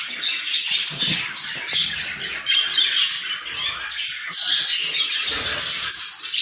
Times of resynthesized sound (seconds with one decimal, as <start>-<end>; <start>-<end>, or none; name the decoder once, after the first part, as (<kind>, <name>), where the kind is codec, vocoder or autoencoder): none